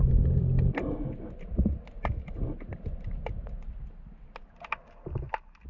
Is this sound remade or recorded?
recorded